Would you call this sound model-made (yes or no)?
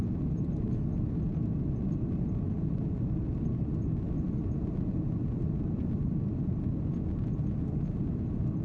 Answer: no